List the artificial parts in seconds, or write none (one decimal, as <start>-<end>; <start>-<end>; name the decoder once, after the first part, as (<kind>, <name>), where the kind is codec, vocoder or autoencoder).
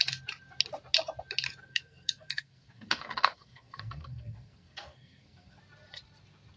1.6-5.6 (codec, SNAC)